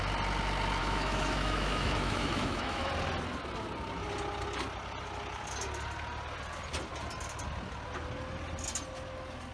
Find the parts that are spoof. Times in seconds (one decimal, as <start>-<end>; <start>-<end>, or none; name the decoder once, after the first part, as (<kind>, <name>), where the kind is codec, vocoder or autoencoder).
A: 0.8-2.9 (autoencoder, DAC-VAE)